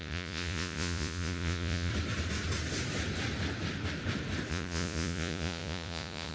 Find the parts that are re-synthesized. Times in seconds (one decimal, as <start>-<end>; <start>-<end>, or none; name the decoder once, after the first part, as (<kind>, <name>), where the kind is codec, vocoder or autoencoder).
0.0-1.9 (vocoder, Vocos); 4.5-6.3